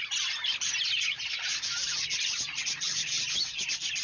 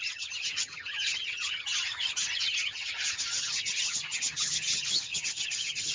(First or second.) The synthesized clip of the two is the second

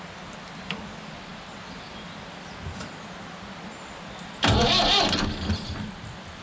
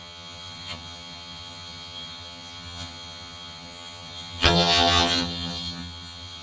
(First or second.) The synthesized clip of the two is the second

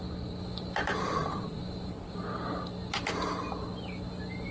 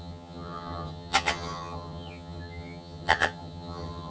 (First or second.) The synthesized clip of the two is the second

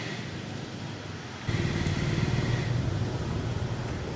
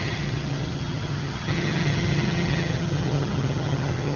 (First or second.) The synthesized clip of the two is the second